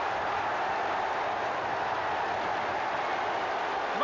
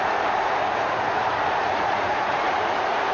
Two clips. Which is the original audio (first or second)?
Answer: first